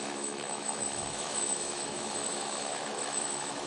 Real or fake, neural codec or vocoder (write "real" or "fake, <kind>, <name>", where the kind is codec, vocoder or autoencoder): fake, autoencoder, DAC-VAE